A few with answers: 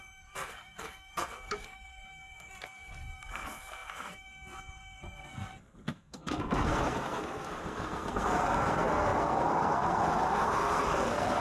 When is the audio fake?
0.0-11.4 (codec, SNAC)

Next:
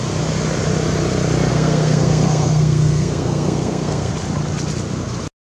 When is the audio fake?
1.5-4.1 (codec, SNAC)

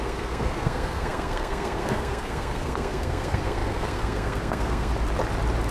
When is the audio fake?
0.0-4.9 (codec, SNAC)